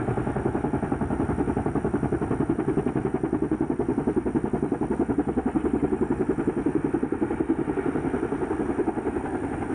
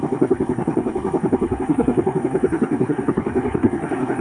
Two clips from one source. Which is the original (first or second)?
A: first